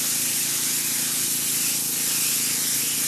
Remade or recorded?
recorded